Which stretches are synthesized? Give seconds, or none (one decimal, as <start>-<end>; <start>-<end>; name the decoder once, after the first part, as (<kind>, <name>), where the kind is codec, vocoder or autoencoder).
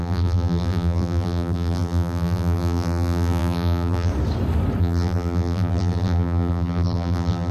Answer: 0.0-4.1 (vocoder, BigVGAN v2); 4.8-7.5